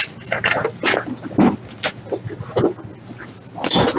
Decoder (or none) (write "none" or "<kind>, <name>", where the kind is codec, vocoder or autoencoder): none